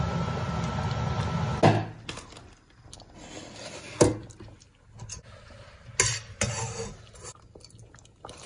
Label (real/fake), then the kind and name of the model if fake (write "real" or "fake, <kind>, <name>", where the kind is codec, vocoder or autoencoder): real